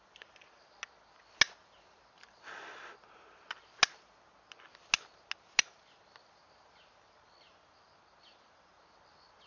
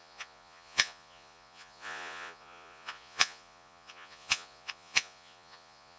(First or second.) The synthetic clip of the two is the second